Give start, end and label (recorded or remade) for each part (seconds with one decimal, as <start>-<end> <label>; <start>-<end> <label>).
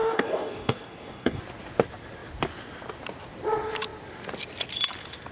0.0-1.4 remade; 1.4-5.3 recorded